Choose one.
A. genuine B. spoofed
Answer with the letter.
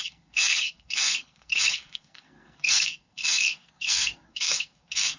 B